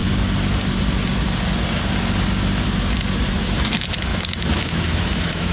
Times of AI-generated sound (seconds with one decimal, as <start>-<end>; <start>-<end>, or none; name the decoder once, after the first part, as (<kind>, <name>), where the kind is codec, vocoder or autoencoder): 3.3-5.5 (autoencoder, DAC-VAE)